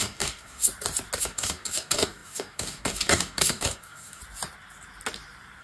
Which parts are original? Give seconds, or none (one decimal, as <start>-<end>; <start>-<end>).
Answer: 0.7-1.2; 4.2-5.6